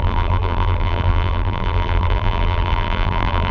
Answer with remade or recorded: remade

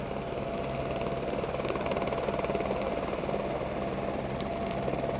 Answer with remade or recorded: recorded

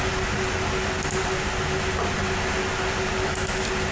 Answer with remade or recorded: recorded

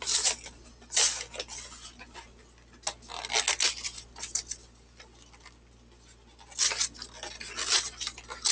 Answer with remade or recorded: recorded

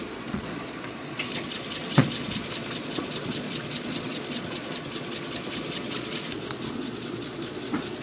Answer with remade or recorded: remade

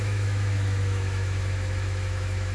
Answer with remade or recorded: remade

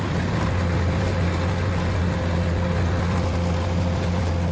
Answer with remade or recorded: recorded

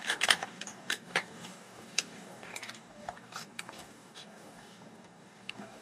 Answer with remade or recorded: remade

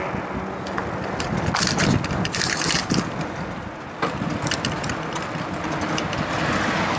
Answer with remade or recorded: recorded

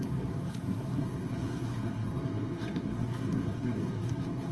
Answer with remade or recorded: remade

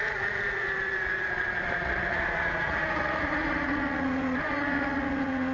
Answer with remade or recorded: remade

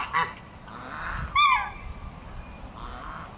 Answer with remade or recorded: recorded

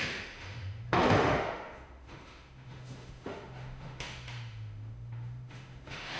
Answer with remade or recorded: remade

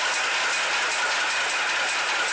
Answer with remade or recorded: recorded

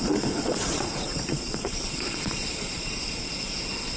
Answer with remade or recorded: remade